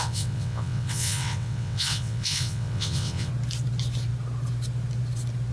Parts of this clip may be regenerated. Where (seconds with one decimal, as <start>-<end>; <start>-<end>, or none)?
0.0-3.3